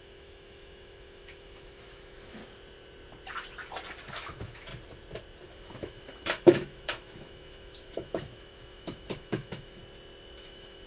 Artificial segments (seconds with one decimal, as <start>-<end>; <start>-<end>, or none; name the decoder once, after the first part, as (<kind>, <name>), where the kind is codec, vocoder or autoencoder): 0.0-2.4 (autoencoder, DAC-VAE); 4.1-4.7; 5.5-9.8; 10.4-10.9